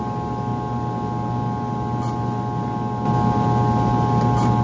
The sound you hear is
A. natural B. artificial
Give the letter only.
A